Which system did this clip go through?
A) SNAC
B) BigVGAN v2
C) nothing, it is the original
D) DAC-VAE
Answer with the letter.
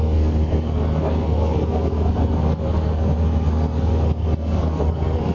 A